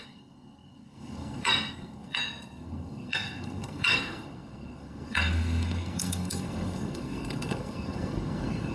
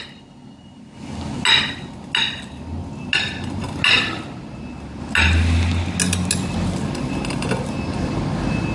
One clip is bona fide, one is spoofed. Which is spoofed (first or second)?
first